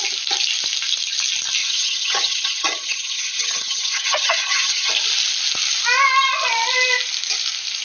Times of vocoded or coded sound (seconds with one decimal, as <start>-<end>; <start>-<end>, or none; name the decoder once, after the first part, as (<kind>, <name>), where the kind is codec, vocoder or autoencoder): 1.6-4.9 (vocoder, HiFi-GAN)